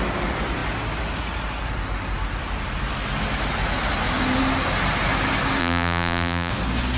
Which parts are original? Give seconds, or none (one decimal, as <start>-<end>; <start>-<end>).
0.0-5.6; 6.5-7.0